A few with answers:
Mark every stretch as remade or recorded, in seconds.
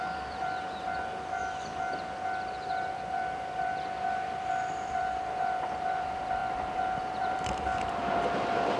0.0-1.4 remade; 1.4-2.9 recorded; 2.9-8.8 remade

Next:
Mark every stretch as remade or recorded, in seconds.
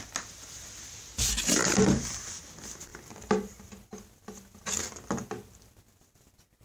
0.0-1.8 recorded; 1.8-2.4 remade; 2.4-6.6 recorded